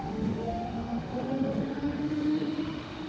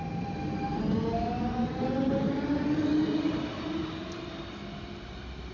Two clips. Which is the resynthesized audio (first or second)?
first